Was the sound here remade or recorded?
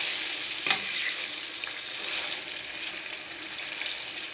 recorded